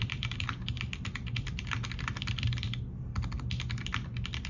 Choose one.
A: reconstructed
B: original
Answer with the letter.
B